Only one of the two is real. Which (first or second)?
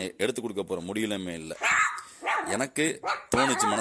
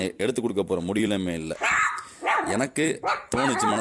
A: first